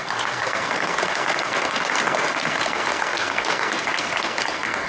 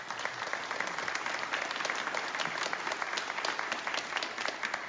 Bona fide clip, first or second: second